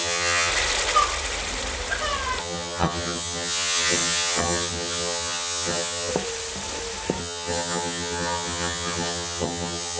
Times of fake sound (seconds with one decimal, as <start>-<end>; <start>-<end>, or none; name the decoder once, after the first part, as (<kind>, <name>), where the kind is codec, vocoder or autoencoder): 0.0-0.5 (vocoder, HiFi-GAN); 2.4-6.1; 7.2-10.0